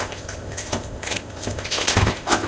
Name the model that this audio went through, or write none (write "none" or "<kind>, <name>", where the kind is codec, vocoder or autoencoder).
codec, ZipCodec